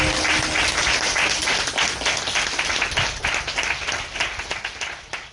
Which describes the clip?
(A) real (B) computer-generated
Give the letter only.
A